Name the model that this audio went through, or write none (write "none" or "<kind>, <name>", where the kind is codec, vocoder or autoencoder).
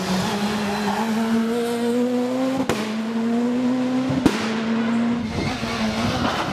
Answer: none